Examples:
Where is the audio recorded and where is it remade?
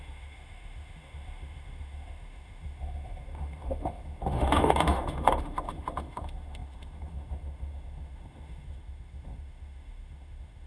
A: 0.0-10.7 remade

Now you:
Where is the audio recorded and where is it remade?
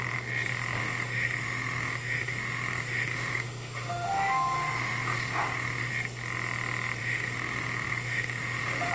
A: 0.0-0.8 recorded; 0.8-5.9 remade; 5.9-7.0 recorded; 7.0-8.9 remade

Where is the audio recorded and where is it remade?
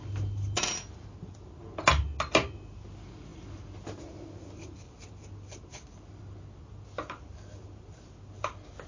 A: 0.0-8.9 recorded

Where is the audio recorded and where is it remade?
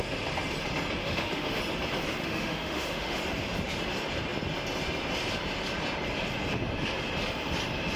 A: 0.0-1.0 recorded; 1.0-1.6 remade; 1.6-2.2 recorded; 2.2-3.2 remade; 3.2-8.0 recorded